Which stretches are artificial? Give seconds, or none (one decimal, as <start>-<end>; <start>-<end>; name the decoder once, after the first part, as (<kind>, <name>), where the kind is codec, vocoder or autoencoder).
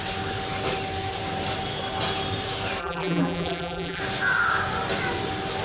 2.8-4.0 (vocoder, BigVGAN v2)